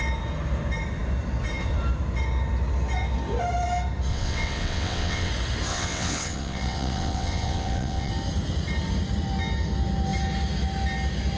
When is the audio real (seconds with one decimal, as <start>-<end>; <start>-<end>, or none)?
0.0-4.1; 5.3-5.7; 8.1-11.4